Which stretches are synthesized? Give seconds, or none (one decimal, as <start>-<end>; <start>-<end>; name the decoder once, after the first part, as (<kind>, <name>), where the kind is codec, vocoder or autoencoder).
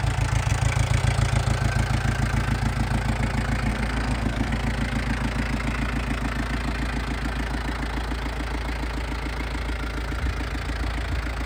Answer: 3.7-4.5 (codec, SNAC)